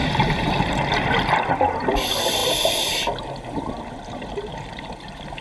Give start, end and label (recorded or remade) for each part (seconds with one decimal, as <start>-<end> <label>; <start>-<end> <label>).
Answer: 0.0-1.9 remade; 1.9-5.4 recorded